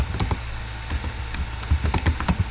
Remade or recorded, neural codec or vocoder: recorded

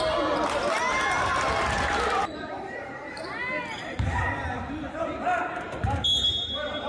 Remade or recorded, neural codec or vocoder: recorded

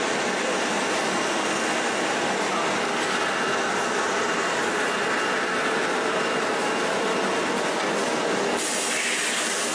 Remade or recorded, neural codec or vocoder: recorded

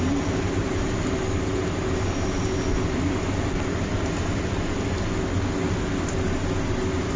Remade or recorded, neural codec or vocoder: recorded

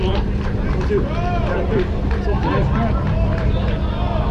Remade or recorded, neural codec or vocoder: recorded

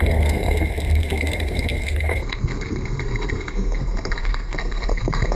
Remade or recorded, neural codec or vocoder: remade, codec, SNAC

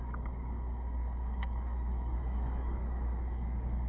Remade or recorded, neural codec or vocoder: remade, codec, DAC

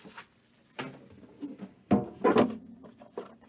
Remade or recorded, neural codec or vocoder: recorded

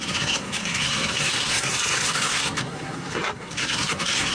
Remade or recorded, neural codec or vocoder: remade, codec, SNAC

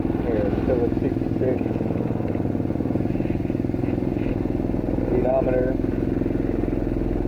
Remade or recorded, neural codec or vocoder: recorded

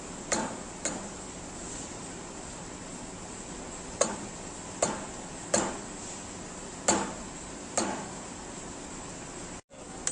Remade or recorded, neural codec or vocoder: recorded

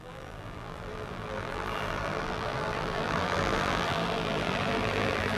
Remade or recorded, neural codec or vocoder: remade, vocoder, BigVGAN v2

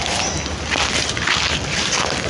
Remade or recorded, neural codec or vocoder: recorded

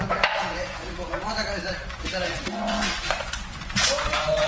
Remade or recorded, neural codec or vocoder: remade, vocoder, Vocos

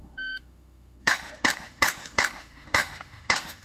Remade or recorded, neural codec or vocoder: remade, autoencoder, DAC-VAE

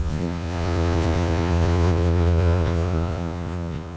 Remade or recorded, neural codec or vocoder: remade, vocoder, Vocos